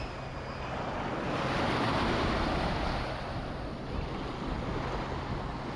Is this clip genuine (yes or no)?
yes